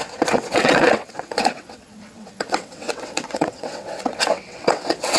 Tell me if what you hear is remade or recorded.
remade